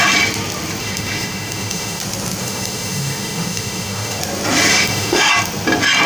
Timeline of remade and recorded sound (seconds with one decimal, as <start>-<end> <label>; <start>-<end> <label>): 0.0-0.8 recorded; 0.8-2.0 remade; 2.0-2.4 recorded; 2.4-4.2 remade; 4.2-4.7 recorded; 4.7-5.3 remade; 5.3-6.1 recorded